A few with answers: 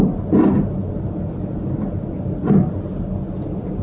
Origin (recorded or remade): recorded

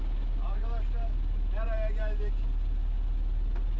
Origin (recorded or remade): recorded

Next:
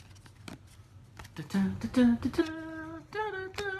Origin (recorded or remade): recorded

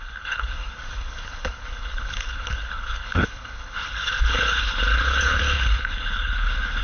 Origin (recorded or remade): remade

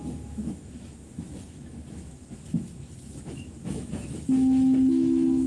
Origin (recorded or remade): remade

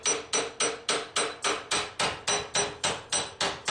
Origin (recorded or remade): recorded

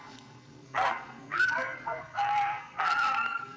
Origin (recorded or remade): remade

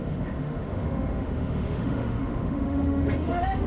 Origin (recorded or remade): remade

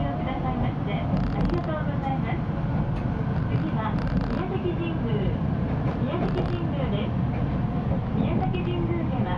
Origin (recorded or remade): recorded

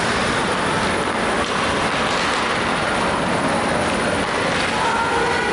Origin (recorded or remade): recorded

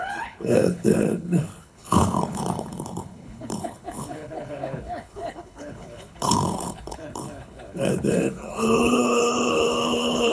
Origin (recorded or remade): remade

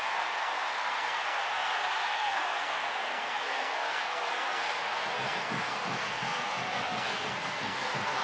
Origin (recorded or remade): remade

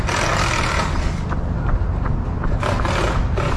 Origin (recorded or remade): recorded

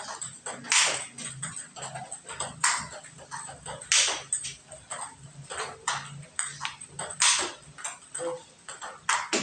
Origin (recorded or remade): recorded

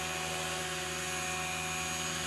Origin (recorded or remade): recorded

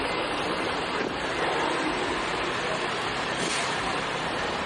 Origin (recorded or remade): remade